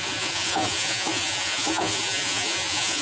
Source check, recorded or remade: remade